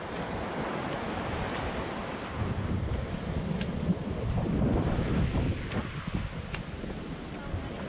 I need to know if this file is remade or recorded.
recorded